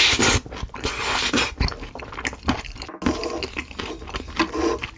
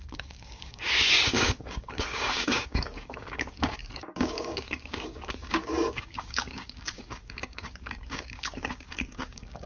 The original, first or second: first